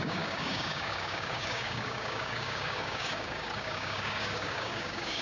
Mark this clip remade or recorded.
remade